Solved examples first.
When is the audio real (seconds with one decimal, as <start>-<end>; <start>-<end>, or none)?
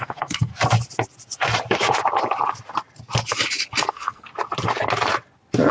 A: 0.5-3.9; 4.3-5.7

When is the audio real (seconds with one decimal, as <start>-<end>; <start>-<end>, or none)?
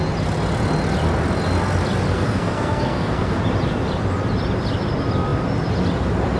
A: 0.0-2.1; 3.4-6.4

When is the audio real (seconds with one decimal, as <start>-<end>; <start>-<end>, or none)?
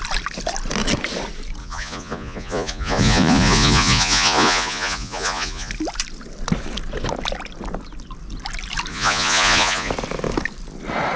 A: 0.0-1.6; 5.7-8.9; 9.9-11.2